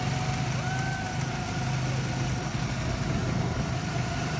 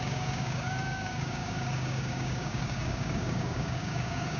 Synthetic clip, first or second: second